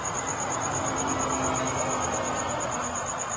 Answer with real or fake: real